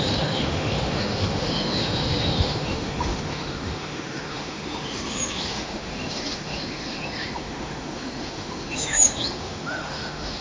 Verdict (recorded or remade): remade